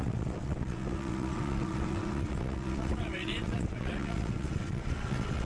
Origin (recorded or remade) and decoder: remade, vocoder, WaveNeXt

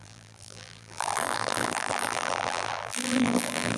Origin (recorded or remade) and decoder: remade, vocoder, BigVGAN v2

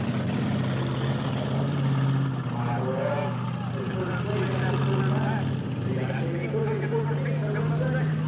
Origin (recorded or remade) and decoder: recorded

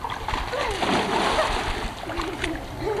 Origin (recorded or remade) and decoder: recorded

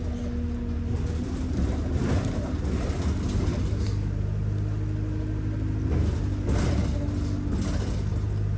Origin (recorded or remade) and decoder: recorded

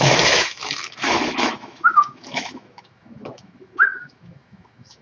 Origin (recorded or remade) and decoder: remade, autoencoder, DAC-VAE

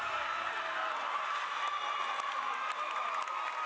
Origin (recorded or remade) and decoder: recorded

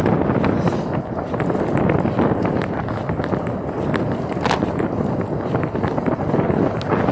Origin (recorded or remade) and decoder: recorded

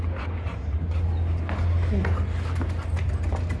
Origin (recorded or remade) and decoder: recorded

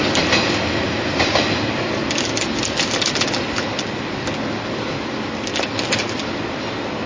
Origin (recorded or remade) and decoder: recorded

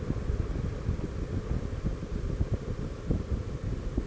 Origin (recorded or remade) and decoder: recorded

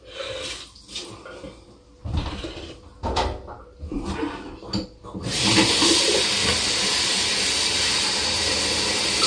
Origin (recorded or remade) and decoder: recorded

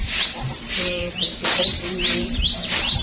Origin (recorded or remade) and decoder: remade, vocoder, BigVGAN v2